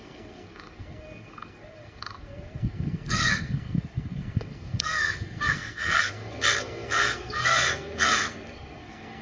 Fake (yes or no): yes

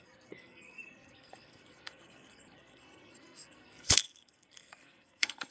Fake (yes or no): yes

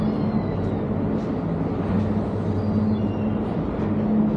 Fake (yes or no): no